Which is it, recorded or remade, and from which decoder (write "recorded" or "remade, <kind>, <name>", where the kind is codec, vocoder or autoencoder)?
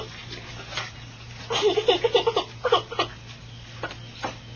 recorded